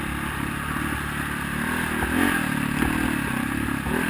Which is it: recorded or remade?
recorded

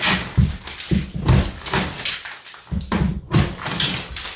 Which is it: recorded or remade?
recorded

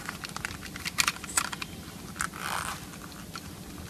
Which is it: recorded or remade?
recorded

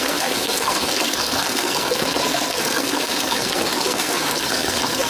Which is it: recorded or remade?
remade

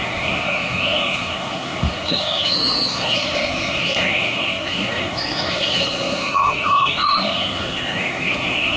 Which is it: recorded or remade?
remade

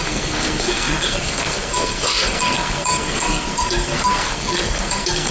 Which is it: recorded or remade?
remade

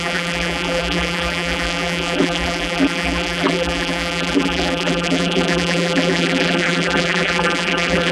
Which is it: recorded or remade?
remade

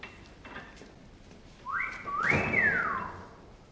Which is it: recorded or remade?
recorded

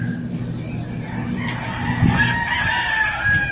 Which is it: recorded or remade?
recorded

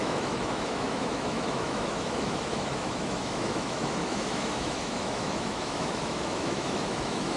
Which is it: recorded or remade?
remade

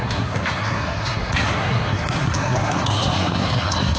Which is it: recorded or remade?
remade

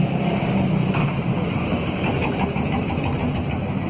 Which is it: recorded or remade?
recorded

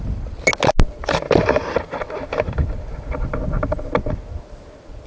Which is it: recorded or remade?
recorded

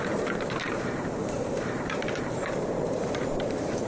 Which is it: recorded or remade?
remade